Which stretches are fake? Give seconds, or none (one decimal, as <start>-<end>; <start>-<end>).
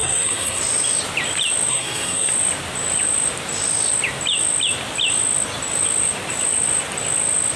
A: 0.0-0.6; 1.7-2.3